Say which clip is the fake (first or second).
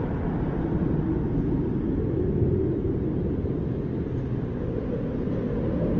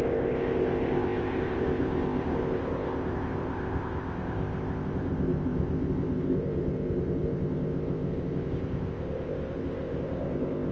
second